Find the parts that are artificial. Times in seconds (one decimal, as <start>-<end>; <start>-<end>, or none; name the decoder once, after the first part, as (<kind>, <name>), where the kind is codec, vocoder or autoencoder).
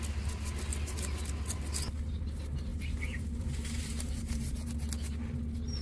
2.7-4.7 (vocoder, BigVGAN v2)